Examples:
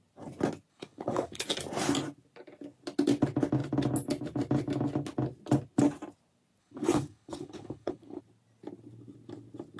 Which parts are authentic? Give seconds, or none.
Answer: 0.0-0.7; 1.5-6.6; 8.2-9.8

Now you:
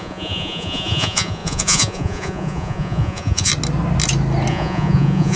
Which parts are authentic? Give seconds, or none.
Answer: 3.5-4.5

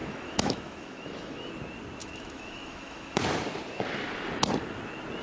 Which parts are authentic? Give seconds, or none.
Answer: 1.5-2.0; 3.2-5.2

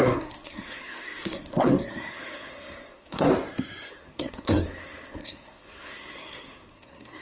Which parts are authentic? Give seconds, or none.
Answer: 3.3-3.9

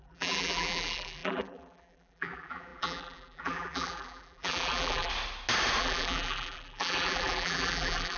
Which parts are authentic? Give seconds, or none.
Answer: 5.1-5.8

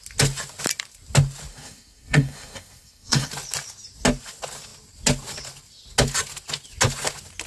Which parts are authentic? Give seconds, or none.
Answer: 0.0-1.5; 3.3-7.5

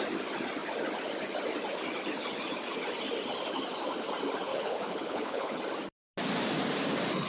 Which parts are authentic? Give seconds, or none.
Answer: 0.0-4.5; 5.6-7.3

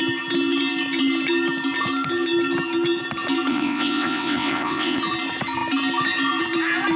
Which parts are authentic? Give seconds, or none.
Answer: 0.0-3.5; 5.0-7.0